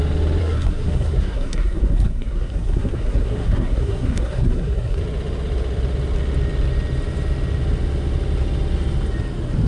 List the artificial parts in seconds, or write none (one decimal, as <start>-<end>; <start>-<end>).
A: 0.4-5.0